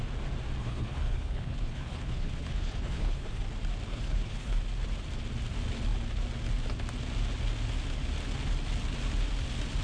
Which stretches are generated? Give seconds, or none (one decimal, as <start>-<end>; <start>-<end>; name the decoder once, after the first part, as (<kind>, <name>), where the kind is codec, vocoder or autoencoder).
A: 0.6-3.4 (codec, HILCodec); 3.9-4.6